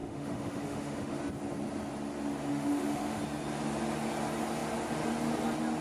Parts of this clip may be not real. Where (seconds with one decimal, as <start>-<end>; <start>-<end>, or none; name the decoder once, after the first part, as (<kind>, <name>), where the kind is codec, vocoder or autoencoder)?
0.0-1.2 (autoencoder, DAC-VAE); 2.5-3.2